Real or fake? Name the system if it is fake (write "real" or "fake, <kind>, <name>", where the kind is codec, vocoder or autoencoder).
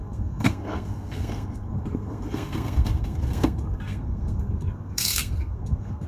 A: fake, codec, SNAC